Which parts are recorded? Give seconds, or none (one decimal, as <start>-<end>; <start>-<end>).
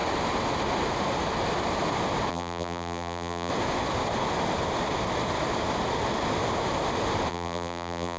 0.0-2.3; 3.5-7.3